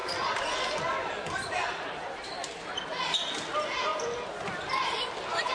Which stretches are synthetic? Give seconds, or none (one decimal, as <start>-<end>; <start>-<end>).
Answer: 0.0-3.3; 3.9-5.1